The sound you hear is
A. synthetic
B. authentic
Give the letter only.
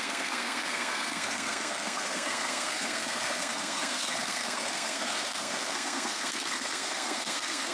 A